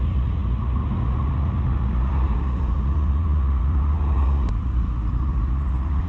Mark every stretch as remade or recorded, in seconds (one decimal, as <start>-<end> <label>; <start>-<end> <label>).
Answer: 0.0-6.1 remade